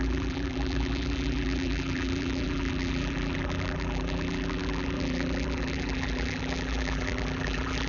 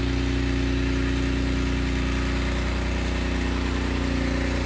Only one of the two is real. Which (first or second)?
second